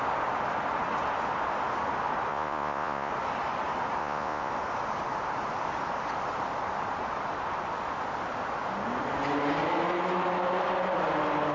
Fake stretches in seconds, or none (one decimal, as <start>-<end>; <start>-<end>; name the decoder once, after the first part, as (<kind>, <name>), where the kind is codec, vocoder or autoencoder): 2.3-3.1 (vocoder, Vocos); 4.0-4.5